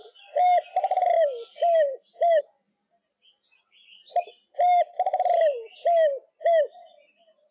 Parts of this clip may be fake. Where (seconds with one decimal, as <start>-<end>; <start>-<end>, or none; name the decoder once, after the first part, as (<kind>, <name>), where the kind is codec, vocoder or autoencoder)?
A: none